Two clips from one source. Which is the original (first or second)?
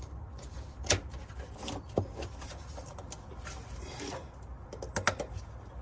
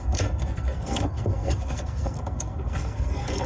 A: first